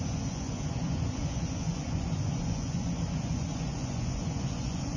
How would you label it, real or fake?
fake